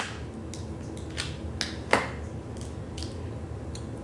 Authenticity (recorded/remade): recorded